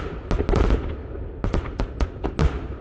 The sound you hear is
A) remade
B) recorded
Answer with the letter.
B